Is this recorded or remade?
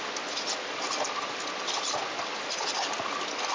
recorded